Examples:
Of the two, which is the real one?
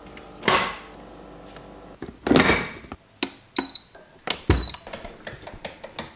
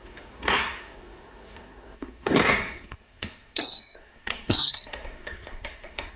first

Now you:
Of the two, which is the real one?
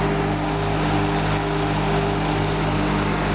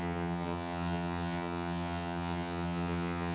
first